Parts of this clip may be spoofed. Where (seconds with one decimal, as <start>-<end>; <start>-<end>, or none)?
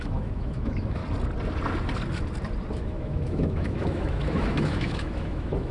0.0-1.0; 2.7-5.7